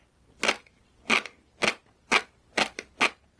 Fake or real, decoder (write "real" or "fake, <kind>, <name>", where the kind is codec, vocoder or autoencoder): real